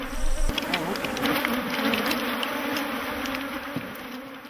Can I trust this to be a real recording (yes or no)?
yes